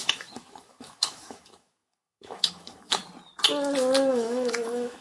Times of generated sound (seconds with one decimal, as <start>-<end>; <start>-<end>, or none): 0.0-3.0; 4.1-5.0